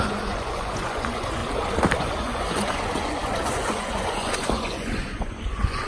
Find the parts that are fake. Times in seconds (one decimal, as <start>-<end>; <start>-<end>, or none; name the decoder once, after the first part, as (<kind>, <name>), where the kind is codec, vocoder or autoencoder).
0.0-1.4 (vocoder, Vocos); 2.0-5.9